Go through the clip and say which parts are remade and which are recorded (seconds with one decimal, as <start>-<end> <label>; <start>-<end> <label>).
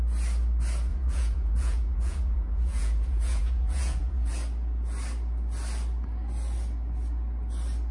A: 0.0-0.9 recorded; 0.9-4.3 remade; 4.3-7.9 recorded